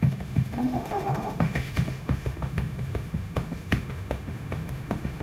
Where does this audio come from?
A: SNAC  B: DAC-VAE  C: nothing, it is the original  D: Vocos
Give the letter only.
B